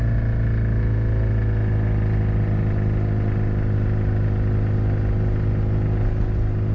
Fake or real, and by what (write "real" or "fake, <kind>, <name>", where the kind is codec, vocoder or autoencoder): real